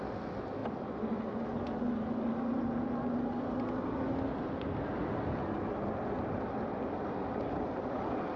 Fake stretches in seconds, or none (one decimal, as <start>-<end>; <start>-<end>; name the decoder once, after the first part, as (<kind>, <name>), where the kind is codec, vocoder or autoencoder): none